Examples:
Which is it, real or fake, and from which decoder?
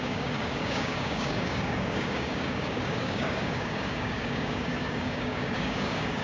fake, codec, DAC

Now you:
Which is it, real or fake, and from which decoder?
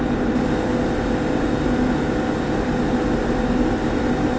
real